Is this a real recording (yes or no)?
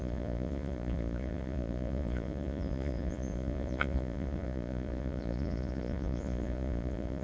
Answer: no